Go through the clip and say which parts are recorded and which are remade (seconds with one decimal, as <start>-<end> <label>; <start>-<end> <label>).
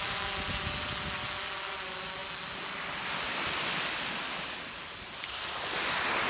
0.0-6.3 recorded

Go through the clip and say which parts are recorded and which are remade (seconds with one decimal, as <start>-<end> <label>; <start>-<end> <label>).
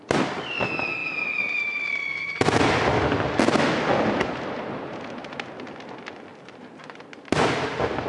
0.0-1.0 recorded; 1.0-2.6 remade; 2.6-8.1 recorded